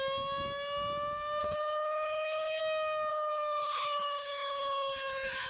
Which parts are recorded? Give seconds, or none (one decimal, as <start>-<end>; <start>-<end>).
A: 0.0-1.4; 2.6-3.1